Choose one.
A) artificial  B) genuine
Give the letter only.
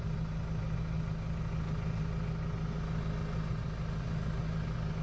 B